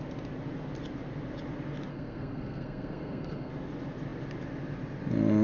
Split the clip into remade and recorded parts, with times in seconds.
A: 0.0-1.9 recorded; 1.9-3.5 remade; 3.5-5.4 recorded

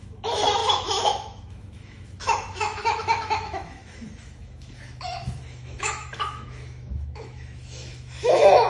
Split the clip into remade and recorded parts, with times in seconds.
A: 0.0-8.7 remade

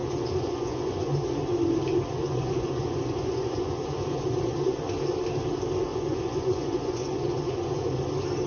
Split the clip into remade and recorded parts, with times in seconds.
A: 0.0-1.3 remade; 1.3-2.2 recorded; 2.2-4.8 remade; 4.8-5.9 recorded; 5.9-8.0 remade; 8.0-8.5 recorded

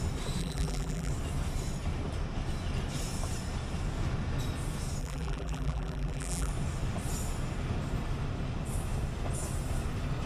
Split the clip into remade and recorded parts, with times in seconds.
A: 0.0-0.4 recorded; 0.4-1.1 remade; 1.1-5.0 recorded; 5.0-6.5 remade; 6.5-10.3 recorded

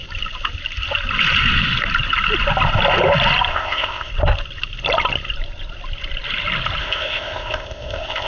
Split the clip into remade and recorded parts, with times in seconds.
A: 0.0-3.5 recorded; 3.5-4.1 remade; 4.1-6.8 recorded; 6.8-8.3 remade

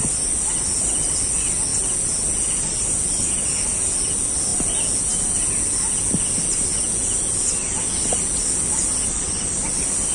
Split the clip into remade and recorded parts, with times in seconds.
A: 0.0-6.7 recorded; 6.7-7.3 remade; 7.3-10.1 recorded

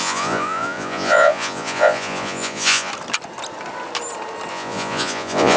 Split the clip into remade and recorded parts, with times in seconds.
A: 0.0-2.9 remade; 2.9-4.5 recorded; 4.5-5.6 remade

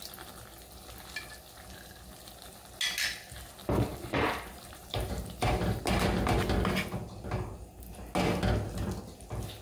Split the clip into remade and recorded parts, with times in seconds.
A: 0.0-3.9 recorded; 3.9-5.8 remade; 5.8-9.6 recorded